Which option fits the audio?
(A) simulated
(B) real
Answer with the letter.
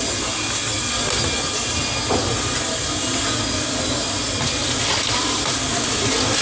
B